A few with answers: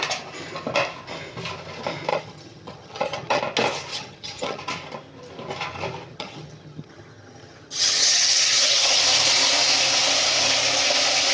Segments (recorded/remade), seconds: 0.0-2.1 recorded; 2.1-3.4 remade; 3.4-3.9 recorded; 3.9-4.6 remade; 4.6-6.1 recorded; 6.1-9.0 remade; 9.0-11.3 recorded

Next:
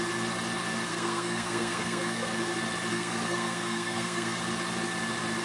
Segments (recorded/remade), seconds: 0.0-0.9 recorded; 0.9-2.3 remade; 2.3-2.9 recorded; 2.9-4.4 remade; 4.4-5.4 recorded

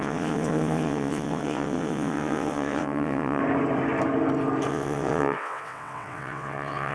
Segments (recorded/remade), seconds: 0.0-3.4 remade; 3.4-4.7 recorded; 4.7-6.9 remade